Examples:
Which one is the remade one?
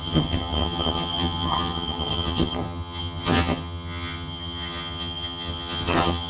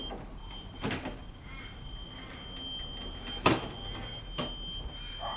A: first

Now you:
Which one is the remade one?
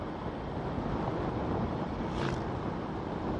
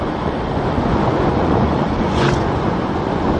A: second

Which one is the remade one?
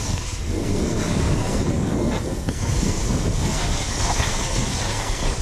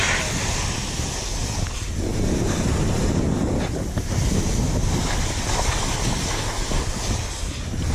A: first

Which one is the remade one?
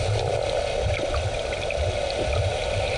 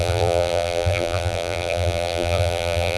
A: second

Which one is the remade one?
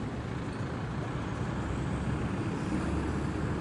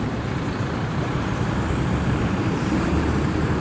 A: second